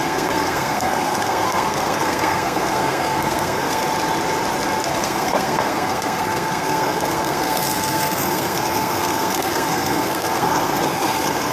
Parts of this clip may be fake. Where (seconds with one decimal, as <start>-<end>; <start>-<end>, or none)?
0.0-3.8; 5.0-11.5